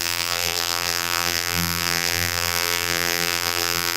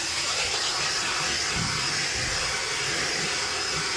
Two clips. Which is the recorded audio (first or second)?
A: second